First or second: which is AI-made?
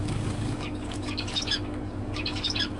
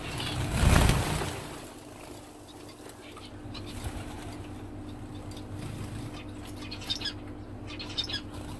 first